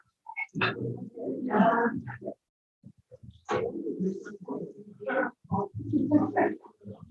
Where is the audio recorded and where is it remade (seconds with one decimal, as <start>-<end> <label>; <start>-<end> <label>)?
0.0-3.2 remade; 3.2-4.3 recorded; 4.3-7.1 remade